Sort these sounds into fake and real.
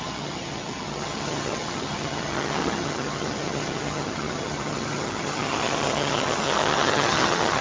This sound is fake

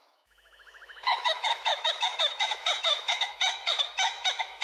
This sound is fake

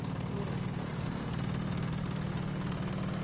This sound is real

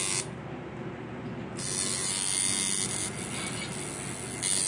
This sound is real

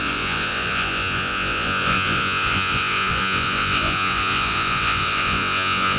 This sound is fake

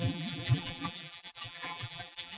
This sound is fake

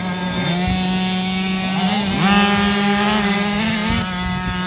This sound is real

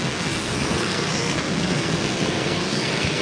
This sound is fake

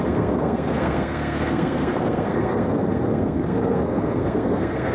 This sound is fake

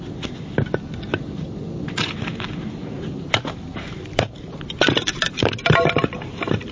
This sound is real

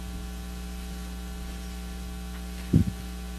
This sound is real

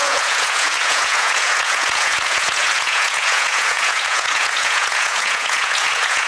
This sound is fake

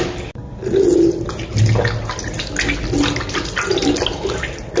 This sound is real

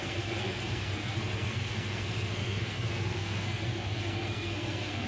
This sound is fake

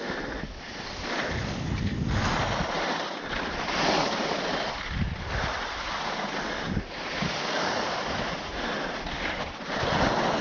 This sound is real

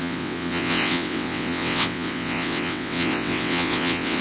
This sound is fake